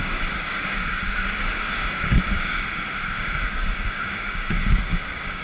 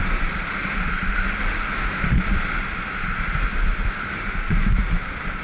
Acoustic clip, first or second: second